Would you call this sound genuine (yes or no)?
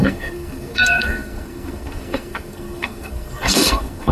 no